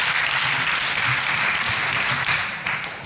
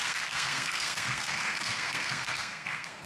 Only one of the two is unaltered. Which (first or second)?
first